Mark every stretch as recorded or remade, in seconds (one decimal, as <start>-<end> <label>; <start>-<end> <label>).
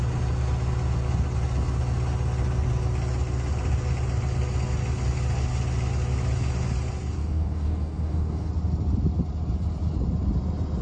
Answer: 0.0-7.2 recorded; 7.2-8.5 remade; 8.5-10.8 recorded